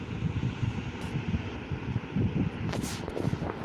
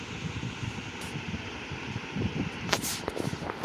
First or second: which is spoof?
second